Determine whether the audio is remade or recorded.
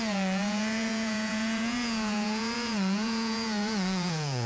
remade